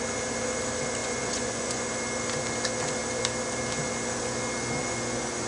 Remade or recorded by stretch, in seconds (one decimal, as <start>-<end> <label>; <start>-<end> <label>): 0.0-1.0 recorded; 1.0-1.9 remade; 1.9-4.8 recorded; 4.8-5.5 remade